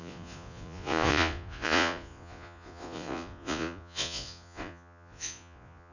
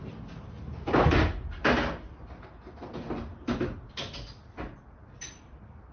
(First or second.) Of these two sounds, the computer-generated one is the first